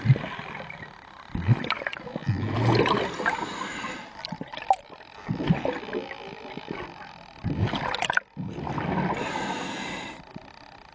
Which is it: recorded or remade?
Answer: recorded